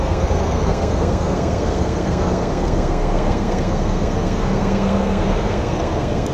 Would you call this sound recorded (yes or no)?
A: no